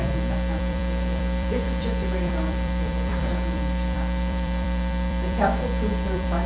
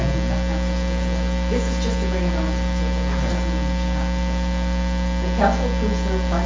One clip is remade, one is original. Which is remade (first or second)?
first